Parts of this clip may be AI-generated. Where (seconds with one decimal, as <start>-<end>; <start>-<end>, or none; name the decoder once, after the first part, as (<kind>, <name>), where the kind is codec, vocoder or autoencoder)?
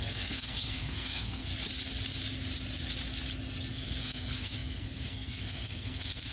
0.0-1.5 (codec, SNAC); 3.7-6.3